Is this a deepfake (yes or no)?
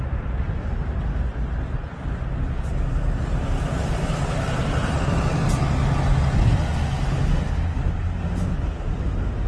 no